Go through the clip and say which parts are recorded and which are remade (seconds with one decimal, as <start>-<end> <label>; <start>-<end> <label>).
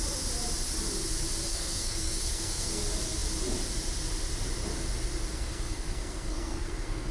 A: 0.0-1.5 recorded; 1.5-2.8 remade; 2.8-5.3 recorded; 5.3-7.1 remade